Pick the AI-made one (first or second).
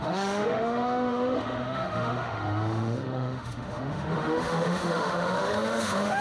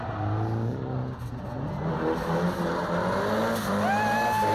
first